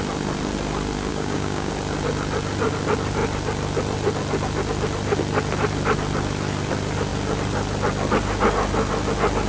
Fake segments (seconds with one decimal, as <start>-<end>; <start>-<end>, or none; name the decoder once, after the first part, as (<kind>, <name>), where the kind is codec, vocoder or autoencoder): 1.1-1.7 (codec, DAC)